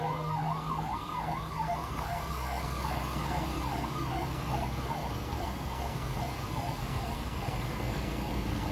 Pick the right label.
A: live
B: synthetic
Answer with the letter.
B